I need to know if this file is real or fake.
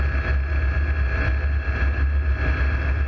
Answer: real